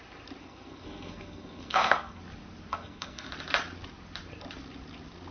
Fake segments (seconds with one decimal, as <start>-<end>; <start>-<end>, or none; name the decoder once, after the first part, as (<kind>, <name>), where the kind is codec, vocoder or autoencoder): 0.4-2.2 (codec, SNAC); 2.7-3.3